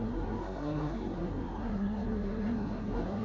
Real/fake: fake